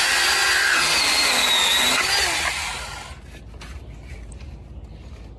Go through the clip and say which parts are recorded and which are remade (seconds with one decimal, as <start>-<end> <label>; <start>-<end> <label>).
0.0-5.4 recorded